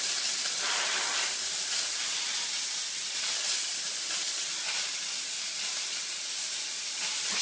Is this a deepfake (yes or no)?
no